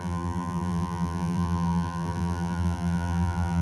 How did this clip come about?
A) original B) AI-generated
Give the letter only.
B